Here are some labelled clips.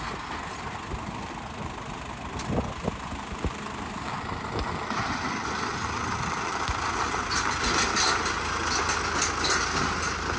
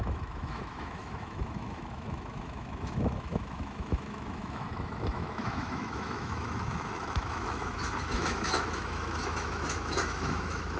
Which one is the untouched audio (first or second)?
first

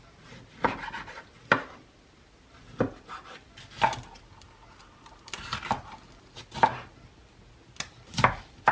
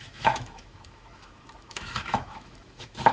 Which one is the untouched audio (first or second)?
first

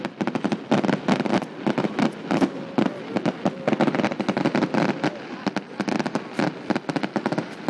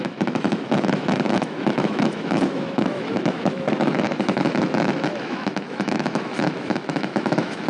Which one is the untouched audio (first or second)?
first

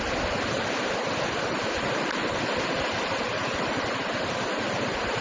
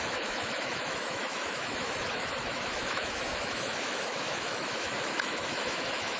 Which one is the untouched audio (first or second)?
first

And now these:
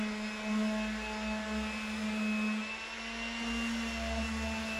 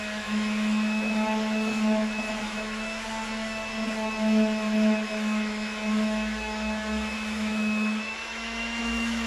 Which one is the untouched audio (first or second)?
first